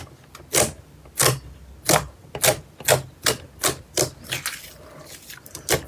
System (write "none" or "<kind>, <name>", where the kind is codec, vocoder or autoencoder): none